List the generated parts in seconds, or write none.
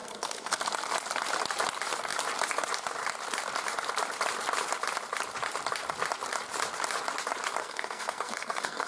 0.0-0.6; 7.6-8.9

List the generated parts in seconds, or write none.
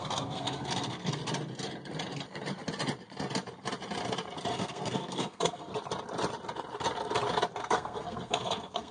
0.0-1.2; 4.5-5.7; 7.6-8.9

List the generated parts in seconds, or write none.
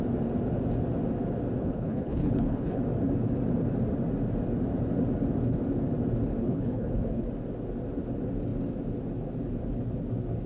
1.6-2.8; 6.4-7.3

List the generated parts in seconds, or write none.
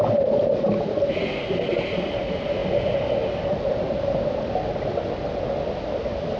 none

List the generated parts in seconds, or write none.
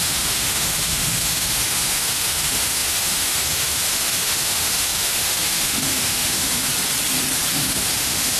0.0-6.7; 7.5-8.4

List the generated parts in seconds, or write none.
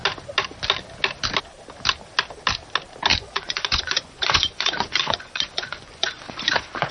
3.1-6.9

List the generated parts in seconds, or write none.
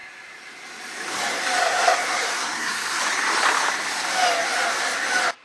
1.6-3.0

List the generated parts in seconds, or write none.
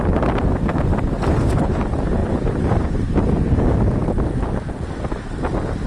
1.3-1.8